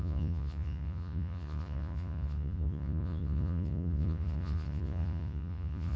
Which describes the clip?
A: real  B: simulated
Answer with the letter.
B